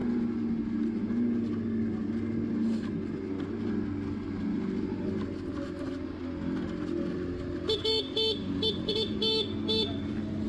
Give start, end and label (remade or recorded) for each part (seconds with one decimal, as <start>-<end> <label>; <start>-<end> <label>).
0.0-10.5 recorded